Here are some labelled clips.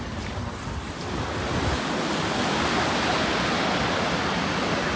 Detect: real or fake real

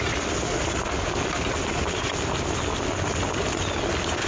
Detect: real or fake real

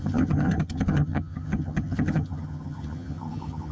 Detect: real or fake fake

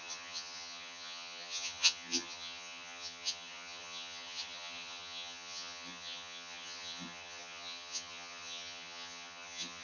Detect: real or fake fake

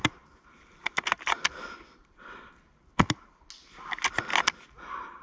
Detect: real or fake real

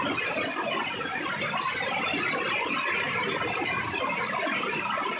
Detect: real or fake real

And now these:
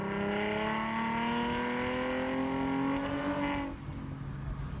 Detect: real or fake real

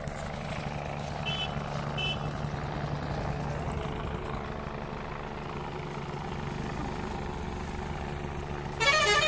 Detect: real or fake real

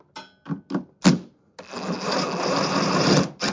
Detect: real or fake real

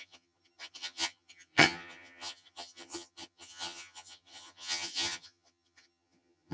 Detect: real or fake fake